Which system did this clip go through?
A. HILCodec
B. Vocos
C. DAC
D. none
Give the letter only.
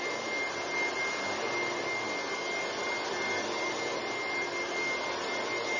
D